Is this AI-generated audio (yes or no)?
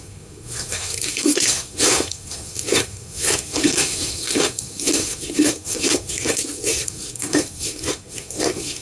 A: yes